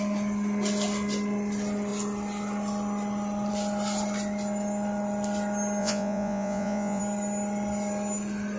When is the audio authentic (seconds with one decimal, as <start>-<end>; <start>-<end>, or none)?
0.0-5.8; 7.0-8.6